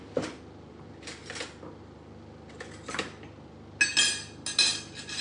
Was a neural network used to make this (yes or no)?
no